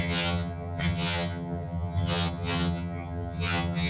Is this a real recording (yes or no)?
no